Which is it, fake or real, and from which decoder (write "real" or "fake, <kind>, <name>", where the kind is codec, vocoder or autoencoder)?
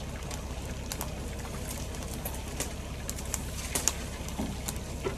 real